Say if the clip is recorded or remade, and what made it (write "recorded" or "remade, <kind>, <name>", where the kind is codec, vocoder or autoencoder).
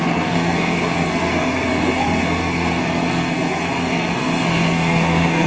remade, codec, SNAC